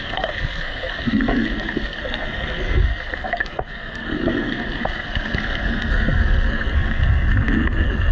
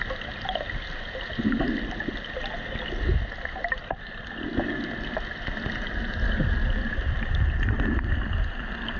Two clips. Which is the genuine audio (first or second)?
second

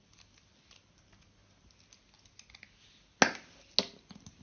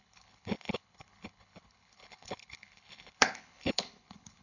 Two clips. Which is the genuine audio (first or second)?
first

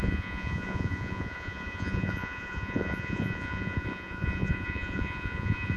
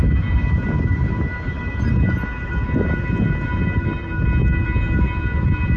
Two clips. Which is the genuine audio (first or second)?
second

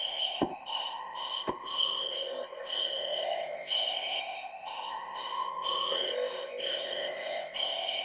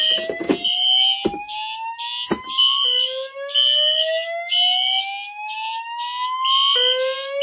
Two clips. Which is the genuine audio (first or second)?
second